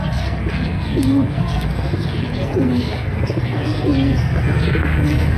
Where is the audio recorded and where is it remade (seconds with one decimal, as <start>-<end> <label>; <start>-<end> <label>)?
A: 0.0-5.4 remade

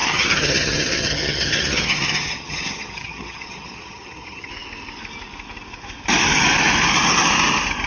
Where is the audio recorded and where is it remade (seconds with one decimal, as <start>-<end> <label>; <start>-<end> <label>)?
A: 0.0-4.5 remade; 4.5-7.9 recorded

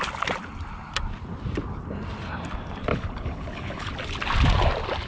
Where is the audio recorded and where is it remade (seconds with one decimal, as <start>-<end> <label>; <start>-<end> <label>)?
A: 0.0-2.9 recorded; 2.9-3.9 remade; 3.9-5.1 recorded

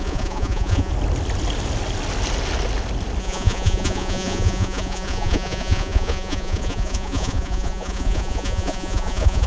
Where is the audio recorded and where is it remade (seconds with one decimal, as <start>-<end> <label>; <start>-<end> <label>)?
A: 0.0-0.9 remade; 0.9-3.2 recorded; 3.2-9.5 remade

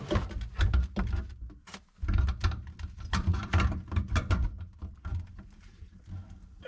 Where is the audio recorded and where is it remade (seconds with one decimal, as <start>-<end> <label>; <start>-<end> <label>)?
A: 0.0-3.3 recorded; 3.3-4.0 remade; 4.0-5.1 recorded; 5.1-6.0 remade; 6.0-6.7 recorded

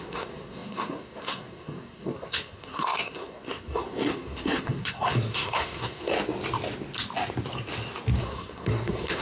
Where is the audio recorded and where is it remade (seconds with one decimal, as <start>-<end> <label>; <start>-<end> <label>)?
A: 0.0-6.1 remade; 6.1-8.2 recorded; 8.2-9.2 remade

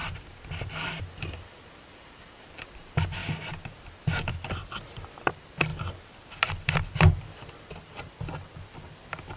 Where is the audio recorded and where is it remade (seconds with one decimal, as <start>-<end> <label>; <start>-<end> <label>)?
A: 0.0-3.2 remade; 3.2-5.3 recorded; 5.3-5.7 remade; 5.7-6.5 recorded; 6.5-9.4 remade